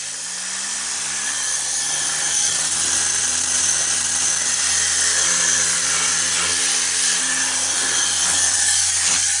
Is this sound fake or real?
real